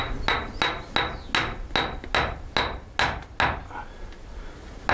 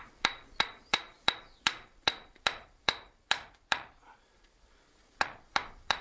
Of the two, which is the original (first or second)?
first